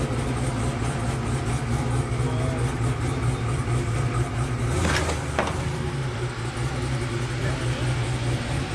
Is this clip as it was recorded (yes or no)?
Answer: yes